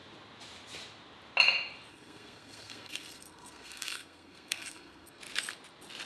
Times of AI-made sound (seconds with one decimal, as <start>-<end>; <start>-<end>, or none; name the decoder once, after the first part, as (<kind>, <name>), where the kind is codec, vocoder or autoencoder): 1.9-5.2 (codec, SNAC)